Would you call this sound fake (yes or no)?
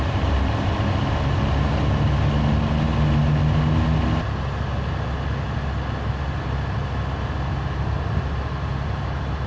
no